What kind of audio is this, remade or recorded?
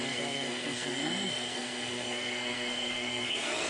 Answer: remade